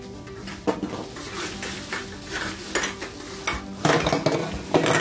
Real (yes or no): yes